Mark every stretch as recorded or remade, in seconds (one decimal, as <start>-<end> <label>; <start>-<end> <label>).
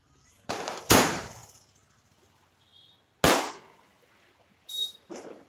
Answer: 0.0-1.4 remade; 1.4-4.7 recorded; 4.7-5.5 remade